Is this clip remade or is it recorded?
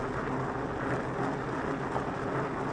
recorded